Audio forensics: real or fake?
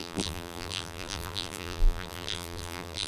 fake